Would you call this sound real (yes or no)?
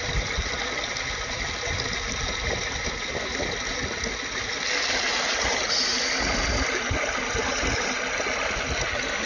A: yes